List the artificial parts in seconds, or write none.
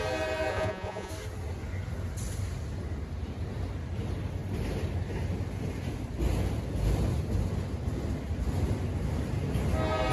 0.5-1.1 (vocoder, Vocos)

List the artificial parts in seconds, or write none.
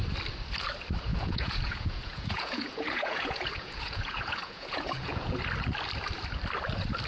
1.1-5.4 (vocoder, Vocos)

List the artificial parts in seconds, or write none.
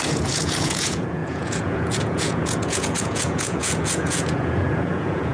0.0-5.3 (vocoder, Vocos)